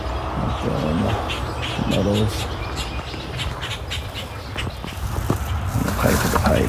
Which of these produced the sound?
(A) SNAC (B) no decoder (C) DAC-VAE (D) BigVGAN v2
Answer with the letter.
B